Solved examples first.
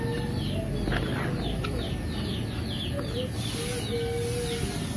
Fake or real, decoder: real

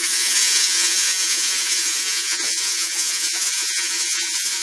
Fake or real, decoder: fake, vocoder, Vocos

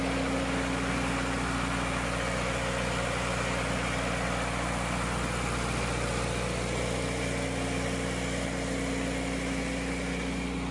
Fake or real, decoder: real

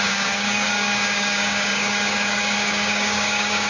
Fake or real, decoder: fake, codec, DAC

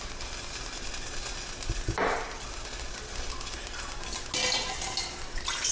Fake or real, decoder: real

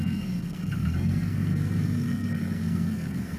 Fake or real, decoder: fake, codec, SNAC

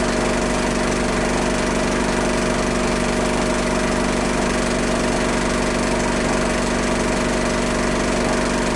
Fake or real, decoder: real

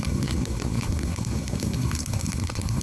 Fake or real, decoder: fake, codec, SNAC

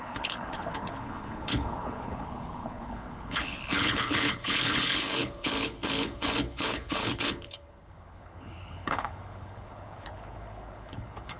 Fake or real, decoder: fake, codec, HILCodec